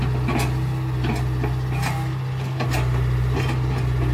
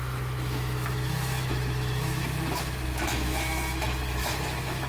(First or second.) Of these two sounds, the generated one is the second